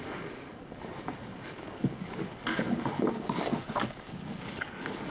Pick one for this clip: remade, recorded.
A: remade